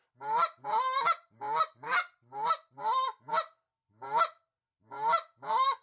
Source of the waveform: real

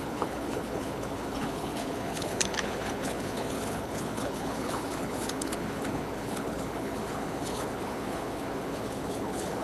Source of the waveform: fake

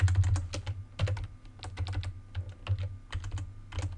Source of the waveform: real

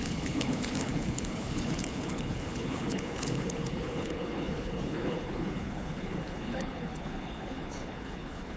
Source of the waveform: fake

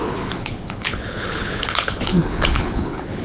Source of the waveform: fake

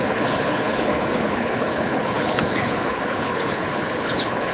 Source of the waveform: fake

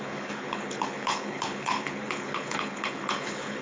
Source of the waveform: fake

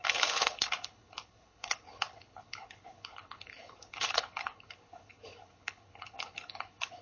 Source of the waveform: fake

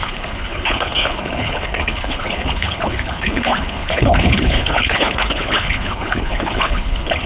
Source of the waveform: fake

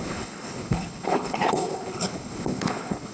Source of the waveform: fake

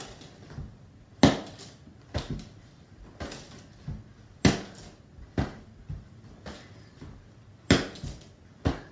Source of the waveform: real